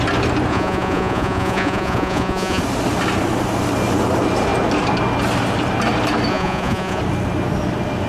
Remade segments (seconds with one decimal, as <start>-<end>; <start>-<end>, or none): 0.5-2.6; 6.3-7.0